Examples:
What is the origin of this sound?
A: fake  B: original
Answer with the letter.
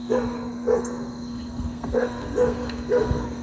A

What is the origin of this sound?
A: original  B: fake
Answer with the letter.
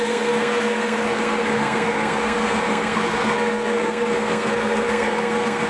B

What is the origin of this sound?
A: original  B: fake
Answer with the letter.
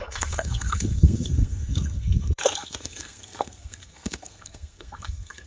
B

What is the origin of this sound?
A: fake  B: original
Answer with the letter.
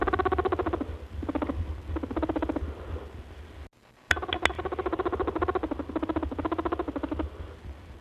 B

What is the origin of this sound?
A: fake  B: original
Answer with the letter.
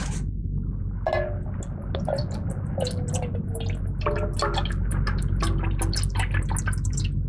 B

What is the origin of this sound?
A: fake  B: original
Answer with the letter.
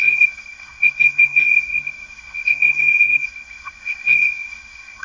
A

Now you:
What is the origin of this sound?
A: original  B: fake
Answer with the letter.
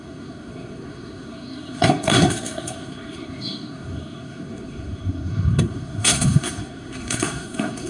B